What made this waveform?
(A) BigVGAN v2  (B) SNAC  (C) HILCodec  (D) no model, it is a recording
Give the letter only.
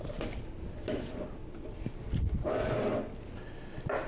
D